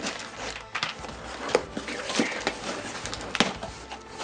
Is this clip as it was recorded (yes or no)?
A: yes